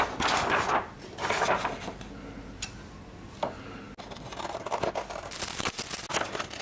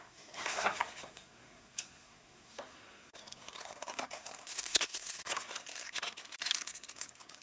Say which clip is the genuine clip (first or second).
first